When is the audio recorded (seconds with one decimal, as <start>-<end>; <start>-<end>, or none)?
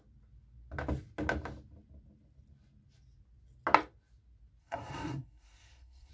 0.0-4.6